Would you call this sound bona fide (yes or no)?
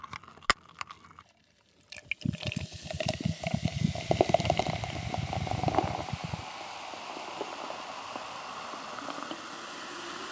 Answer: yes